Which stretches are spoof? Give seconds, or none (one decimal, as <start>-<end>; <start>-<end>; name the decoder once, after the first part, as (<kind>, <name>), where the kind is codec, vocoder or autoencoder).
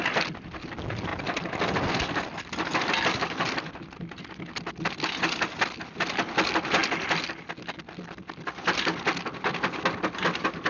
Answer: none